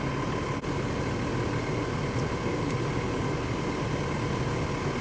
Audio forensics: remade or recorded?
recorded